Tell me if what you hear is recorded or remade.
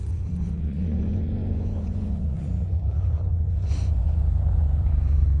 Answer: remade